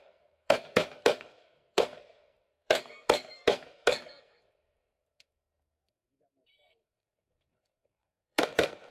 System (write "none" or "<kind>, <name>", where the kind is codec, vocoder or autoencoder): codec, SNAC